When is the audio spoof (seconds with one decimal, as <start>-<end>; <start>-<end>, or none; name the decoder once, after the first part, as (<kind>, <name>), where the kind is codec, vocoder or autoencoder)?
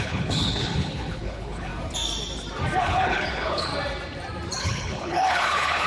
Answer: 0.0-1.7 (codec, HILCodec); 2.8-3.7; 4.6-5.9